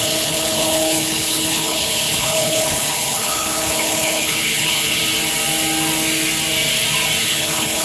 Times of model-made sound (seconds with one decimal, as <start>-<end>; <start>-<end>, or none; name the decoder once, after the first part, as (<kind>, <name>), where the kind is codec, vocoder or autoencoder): 0.0-5.0 (codec, HILCodec); 7.2-7.8

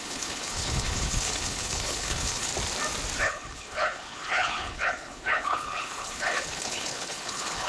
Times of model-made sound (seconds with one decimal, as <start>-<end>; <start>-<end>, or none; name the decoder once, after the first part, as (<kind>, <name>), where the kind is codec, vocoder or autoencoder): 0.0-2.5 (codec, HILCodec); 3.2-7.7

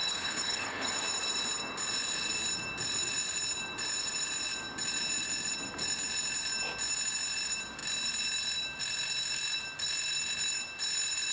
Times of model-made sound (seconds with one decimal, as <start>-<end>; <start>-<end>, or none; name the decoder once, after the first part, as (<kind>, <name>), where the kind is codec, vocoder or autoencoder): 0.0-0.9 (codec, HILCodec)

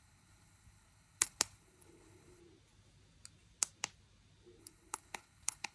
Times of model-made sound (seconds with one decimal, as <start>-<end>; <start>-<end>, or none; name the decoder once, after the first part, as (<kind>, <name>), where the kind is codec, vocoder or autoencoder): 0.0-2.4 (codec, HILCodec); 4.6-5.7

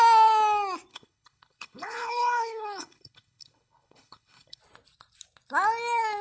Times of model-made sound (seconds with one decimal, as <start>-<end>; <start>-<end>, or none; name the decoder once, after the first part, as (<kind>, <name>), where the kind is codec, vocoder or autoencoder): 0.9-4.6 (codec, HILCodec)

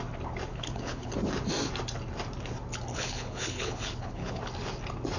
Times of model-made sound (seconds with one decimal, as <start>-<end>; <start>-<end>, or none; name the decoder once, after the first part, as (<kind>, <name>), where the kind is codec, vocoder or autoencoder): 0.5-1.1 (codec, HILCodec); 2.9-4.4

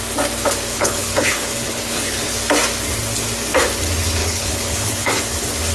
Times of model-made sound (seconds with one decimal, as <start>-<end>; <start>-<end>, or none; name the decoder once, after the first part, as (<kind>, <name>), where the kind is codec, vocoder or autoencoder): 0.7-2.2 (codec, HILCodec); 4.2-5.2

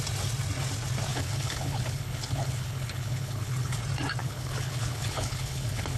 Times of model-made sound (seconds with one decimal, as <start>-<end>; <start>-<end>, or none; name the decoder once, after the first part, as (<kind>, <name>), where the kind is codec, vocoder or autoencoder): 1.1-3.8 (codec, HILCodec); 4.2-6.0